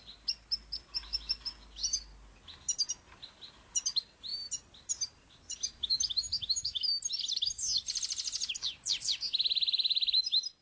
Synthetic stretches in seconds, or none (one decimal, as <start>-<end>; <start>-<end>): none